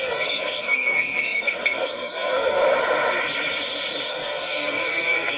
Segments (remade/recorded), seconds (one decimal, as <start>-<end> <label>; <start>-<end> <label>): 0.0-2.6 remade; 2.6-4.1 recorded; 4.1-5.4 remade